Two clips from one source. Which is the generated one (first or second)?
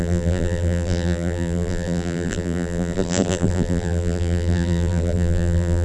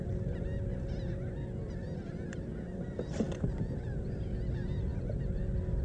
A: first